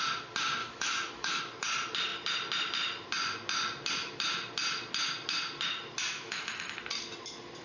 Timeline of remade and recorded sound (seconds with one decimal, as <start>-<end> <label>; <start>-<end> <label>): 0.0-0.6 recorded; 0.6-1.4 remade; 1.4-6.1 recorded; 6.1-6.8 remade; 6.8-7.6 recorded